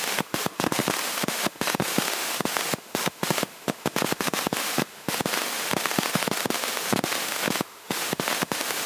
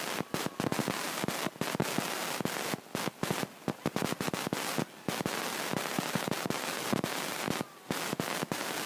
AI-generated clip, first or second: first